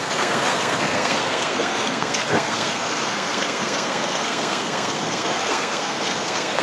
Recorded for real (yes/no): no